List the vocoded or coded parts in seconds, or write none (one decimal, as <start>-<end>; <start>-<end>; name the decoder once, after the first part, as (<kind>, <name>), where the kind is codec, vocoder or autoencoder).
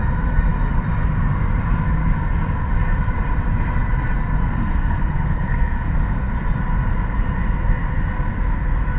4.5-6.3 (codec, SNAC)